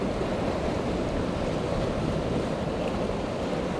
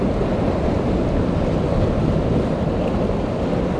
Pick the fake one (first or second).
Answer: first